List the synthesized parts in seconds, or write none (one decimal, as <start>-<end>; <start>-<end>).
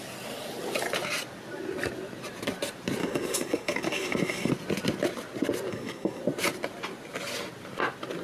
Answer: 3.0-4.5; 5.7-6.2